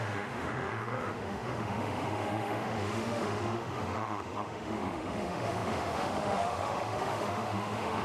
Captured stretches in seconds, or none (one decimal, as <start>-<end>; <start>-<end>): none